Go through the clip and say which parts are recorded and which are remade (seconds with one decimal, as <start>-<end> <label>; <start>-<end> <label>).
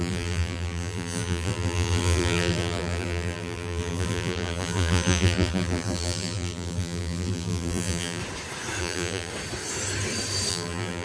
0.0-8.2 remade; 8.2-8.8 recorded; 8.8-9.3 remade; 9.3-10.5 recorded; 10.5-11.0 remade